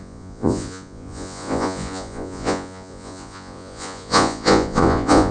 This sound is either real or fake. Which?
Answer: fake